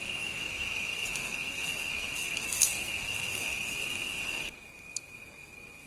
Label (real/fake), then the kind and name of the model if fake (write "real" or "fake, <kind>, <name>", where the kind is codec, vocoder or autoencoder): fake, codec, SNAC